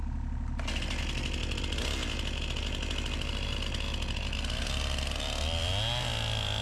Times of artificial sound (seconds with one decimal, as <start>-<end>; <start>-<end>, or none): none

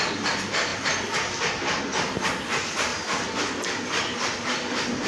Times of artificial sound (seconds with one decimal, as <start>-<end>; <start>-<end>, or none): none

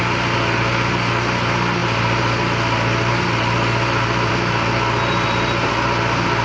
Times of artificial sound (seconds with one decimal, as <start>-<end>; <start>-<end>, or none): none

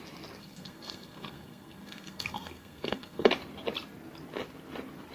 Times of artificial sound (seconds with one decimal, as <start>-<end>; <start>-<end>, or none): 0.4-3.3

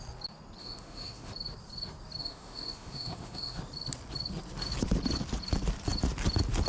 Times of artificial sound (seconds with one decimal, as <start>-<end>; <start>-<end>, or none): 0.6-1.3; 2.2-3.6

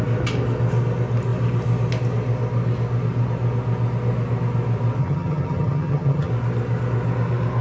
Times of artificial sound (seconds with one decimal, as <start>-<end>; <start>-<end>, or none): 5.0-6.3